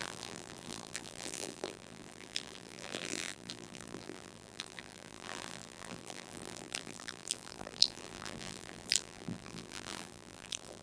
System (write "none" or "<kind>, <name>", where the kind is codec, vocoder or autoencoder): vocoder, BigVGAN v2